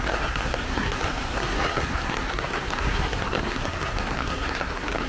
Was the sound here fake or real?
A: fake